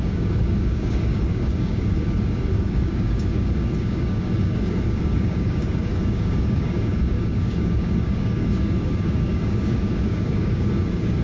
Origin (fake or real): fake